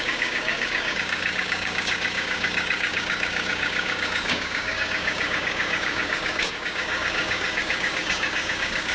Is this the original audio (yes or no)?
no